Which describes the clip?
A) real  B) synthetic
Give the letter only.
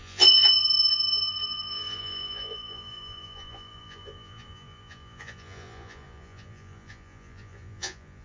B